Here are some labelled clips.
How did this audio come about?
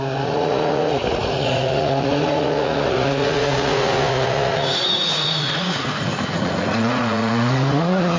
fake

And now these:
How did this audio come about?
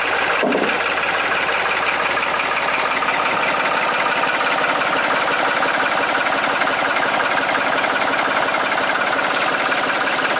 real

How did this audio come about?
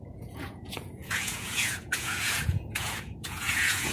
fake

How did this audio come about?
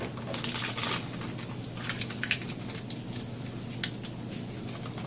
real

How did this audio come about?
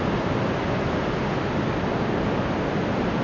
real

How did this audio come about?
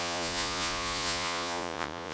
fake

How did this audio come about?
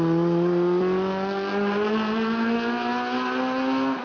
real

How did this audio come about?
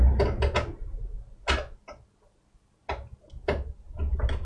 real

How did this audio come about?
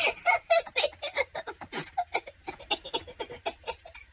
real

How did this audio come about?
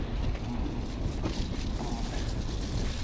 real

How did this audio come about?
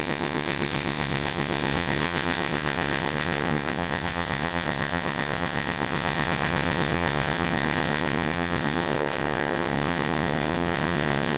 fake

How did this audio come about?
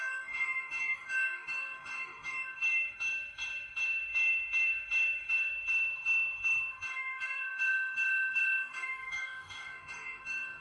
fake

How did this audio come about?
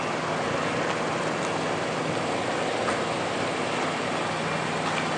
real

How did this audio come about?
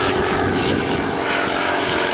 fake